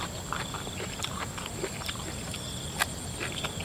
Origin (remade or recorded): recorded